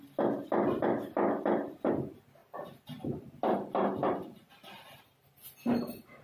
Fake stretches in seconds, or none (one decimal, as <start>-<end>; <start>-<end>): none